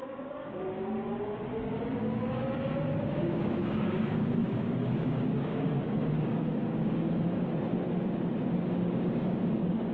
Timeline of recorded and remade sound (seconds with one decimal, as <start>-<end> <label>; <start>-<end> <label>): 0.0-7.4 remade; 7.4-8.6 recorded; 8.6-9.9 remade